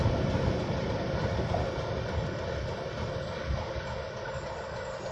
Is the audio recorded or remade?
recorded